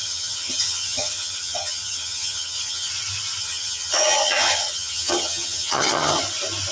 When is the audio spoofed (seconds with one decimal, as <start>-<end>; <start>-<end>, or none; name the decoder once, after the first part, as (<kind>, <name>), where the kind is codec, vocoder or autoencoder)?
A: 0.0-2.9 (vocoder, HiFi-GAN); 3.4-6.2